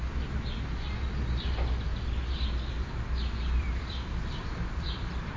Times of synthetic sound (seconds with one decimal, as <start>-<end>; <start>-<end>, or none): none